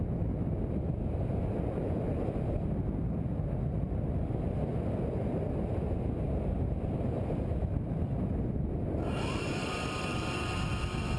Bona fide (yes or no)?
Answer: yes